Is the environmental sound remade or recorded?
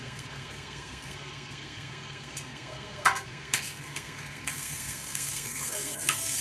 remade